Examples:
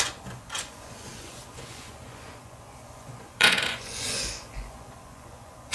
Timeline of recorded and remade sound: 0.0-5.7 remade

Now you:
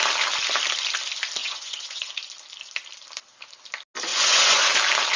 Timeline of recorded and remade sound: 0.0-1.4 recorded; 1.4-2.1 remade; 2.1-4.1 recorded; 4.1-4.7 remade; 4.7-5.2 recorded

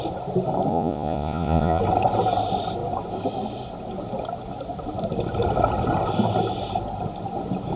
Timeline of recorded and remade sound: 0.0-0.7 recorded; 0.7-1.8 remade; 1.8-7.8 recorded

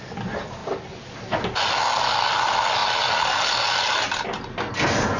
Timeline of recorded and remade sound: 0.0-5.2 recorded